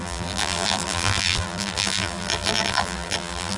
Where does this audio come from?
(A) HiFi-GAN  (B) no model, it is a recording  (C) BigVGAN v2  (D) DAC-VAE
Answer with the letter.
C